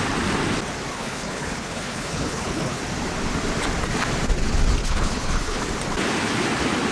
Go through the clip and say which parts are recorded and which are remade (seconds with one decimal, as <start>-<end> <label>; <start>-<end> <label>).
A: 0.0-0.9 recorded; 0.9-2.8 remade; 2.8-4.8 recorded; 4.8-5.6 remade; 5.6-6.9 recorded

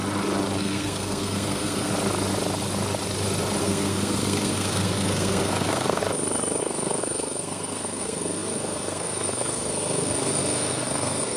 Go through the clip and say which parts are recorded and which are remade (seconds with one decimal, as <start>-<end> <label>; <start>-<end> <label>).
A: 0.0-0.6 recorded; 0.6-1.9 remade; 1.9-3.6 recorded; 3.6-6.0 remade; 6.0-6.6 recorded; 6.6-11.4 remade

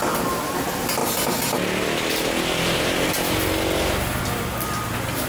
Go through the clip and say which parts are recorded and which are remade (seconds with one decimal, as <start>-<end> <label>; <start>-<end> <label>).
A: 0.0-5.3 recorded

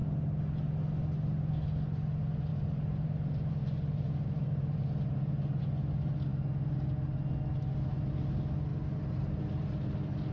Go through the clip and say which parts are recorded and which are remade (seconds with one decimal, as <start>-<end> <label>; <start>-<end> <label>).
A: 0.0-2.5 recorded; 2.5-5.6 remade; 5.6-8.7 recorded; 8.7-9.4 remade; 9.4-10.3 recorded